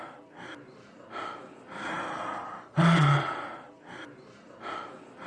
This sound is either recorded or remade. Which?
recorded